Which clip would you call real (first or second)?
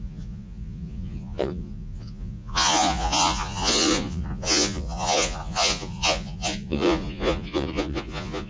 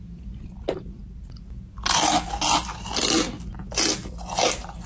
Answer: second